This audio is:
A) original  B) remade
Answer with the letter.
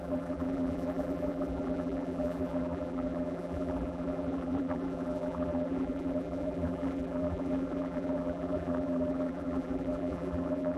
B